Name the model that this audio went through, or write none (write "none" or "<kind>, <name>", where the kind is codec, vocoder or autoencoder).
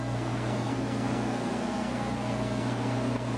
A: codec, SNAC